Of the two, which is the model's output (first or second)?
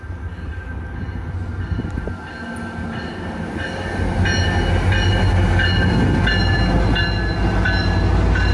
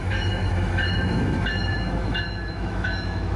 second